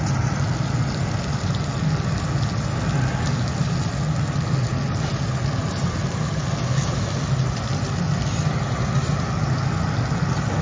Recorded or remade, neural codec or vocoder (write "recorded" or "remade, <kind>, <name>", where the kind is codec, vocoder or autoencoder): recorded